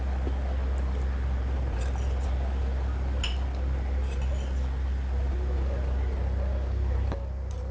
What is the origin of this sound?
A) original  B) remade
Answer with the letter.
A